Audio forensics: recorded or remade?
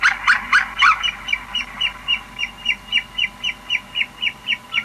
recorded